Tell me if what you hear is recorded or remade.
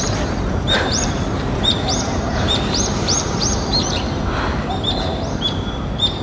remade